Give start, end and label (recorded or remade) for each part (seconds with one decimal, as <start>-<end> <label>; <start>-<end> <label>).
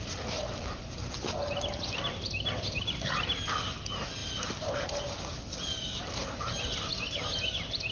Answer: 0.0-7.9 recorded